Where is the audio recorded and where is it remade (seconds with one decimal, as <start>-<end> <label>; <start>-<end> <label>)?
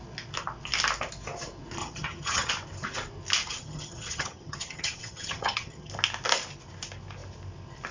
0.0-1.8 recorded; 1.8-2.5 remade; 2.5-3.4 recorded; 3.4-5.9 remade; 5.9-7.9 recorded